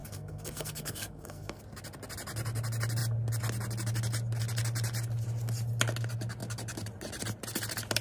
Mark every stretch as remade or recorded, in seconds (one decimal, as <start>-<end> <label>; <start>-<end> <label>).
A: 0.0-1.6 remade; 1.6-8.0 recorded